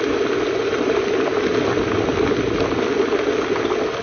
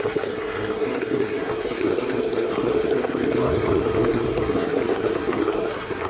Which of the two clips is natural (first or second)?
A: first